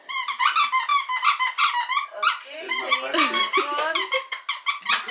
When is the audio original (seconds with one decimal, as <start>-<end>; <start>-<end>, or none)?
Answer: 0.0-5.1